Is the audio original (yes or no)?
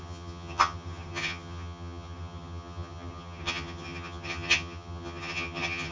no